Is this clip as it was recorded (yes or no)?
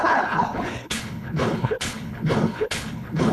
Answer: no